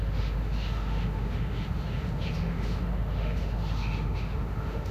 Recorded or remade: remade